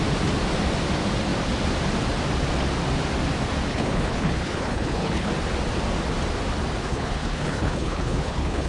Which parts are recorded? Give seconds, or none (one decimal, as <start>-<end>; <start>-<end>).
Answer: 0.0-3.7; 5.3-6.8